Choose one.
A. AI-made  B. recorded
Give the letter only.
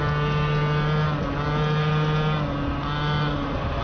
B